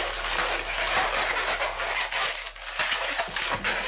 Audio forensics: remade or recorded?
recorded